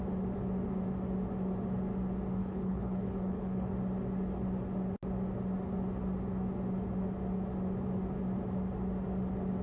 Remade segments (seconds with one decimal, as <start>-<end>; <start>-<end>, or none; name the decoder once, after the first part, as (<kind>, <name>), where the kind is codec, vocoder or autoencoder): 2.4-3.7 (codec, HILCodec)